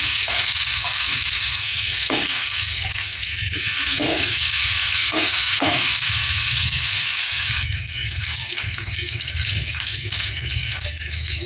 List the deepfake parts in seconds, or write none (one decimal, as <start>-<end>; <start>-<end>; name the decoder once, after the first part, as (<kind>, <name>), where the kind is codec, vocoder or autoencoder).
0.0-11.5 (codec, SNAC)